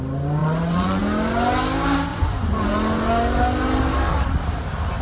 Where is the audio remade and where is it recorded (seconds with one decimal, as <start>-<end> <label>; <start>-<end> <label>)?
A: 0.0-0.4 recorded; 0.4-1.0 remade; 1.0-2.1 recorded; 2.1-2.7 remade; 2.7-5.0 recorded